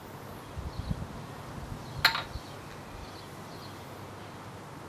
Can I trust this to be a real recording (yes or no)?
yes